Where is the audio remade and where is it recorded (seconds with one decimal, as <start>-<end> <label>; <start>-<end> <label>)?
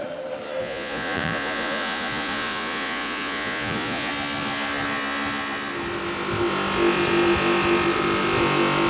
0.0-0.6 recorded; 0.6-4.1 remade; 4.1-8.9 recorded